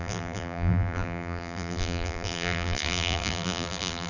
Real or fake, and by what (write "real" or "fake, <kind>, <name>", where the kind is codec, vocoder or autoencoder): fake, vocoder, BigVGAN v2